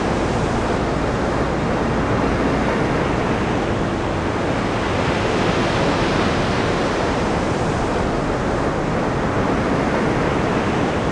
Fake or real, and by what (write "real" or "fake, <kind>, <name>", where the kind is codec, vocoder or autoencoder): real